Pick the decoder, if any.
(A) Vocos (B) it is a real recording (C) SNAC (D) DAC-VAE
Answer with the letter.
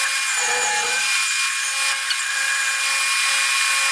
B